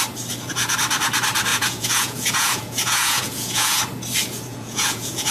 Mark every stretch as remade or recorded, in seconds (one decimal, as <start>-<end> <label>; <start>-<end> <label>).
0.0-1.5 recorded; 1.5-3.8 remade; 3.8-4.5 recorded; 4.5-5.3 remade